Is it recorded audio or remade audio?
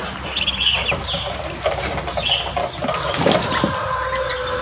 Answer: recorded